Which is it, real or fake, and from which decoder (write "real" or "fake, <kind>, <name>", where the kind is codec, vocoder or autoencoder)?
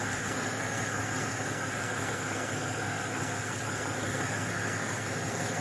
fake, codec, SNAC